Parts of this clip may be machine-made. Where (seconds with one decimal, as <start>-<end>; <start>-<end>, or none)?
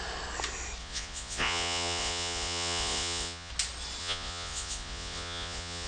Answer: 0.8-3.5; 4.0-5.9